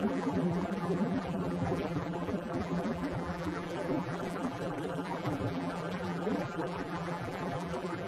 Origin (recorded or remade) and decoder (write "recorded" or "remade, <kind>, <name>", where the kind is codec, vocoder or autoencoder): remade, vocoder, BigVGAN v2